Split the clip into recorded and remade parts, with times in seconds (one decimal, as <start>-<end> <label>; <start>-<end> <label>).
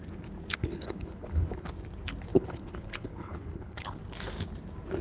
0.0-0.6 recorded; 0.6-1.7 remade; 1.7-2.3 recorded; 2.3-4.0 remade; 4.0-5.0 recorded